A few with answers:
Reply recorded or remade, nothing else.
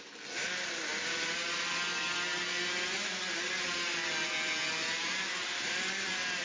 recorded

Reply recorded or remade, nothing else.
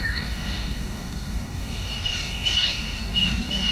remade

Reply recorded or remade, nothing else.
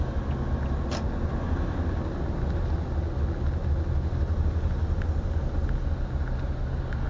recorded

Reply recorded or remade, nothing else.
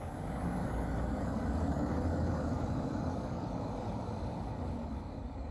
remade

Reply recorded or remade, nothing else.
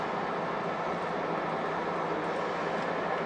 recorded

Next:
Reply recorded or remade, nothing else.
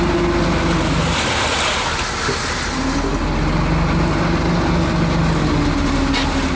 recorded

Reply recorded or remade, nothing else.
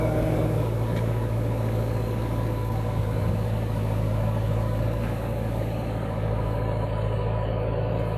remade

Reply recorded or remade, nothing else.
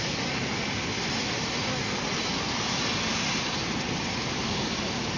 recorded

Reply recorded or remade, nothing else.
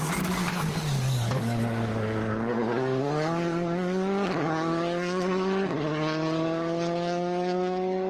remade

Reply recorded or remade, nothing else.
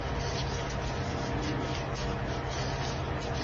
recorded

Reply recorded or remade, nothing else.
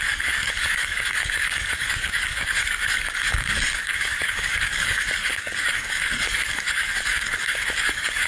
remade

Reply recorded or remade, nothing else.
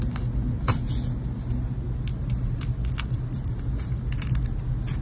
recorded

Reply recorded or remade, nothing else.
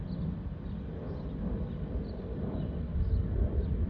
recorded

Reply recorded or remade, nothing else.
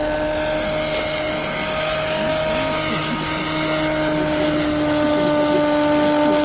recorded